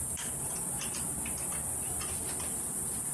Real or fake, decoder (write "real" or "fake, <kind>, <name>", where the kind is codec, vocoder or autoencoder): real